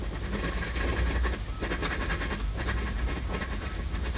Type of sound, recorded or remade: recorded